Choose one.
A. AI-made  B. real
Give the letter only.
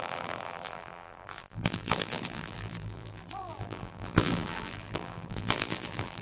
A